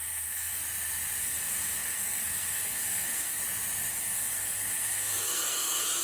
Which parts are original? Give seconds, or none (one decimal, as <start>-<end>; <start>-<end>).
0.6-1.2; 3.4-3.9